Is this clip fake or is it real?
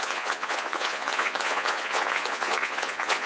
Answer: fake